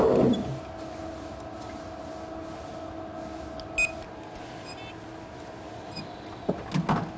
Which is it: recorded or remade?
recorded